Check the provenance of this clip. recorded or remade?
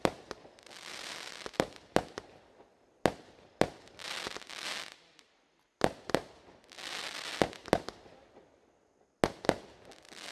recorded